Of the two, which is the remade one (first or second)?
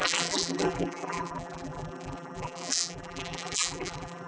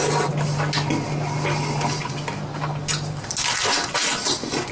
first